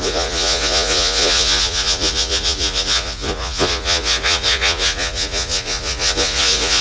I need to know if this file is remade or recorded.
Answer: remade